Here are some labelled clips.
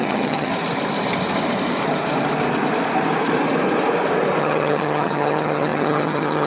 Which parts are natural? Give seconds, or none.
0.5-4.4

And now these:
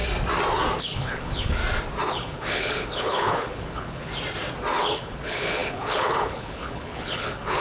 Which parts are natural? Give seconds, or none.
0.0-0.8; 1.6-2.1; 4.1-4.8

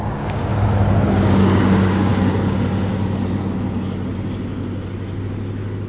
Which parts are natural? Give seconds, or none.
0.5-1.1; 2.1-5.9

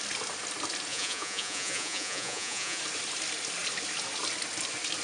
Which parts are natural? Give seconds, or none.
0.0-0.9; 2.8-5.0